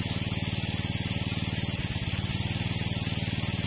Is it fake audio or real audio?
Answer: real